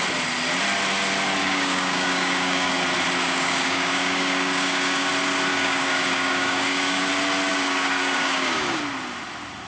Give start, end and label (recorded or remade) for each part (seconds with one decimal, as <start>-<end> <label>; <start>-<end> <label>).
0.0-1.4 recorded; 1.4-2.7 remade; 2.7-3.2 recorded; 3.2-5.1 remade; 5.1-5.5 recorded; 5.5-7.1 remade; 7.1-7.5 recorded; 7.5-8.8 remade; 8.8-9.7 recorded